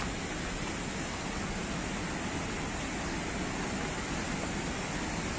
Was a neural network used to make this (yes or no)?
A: no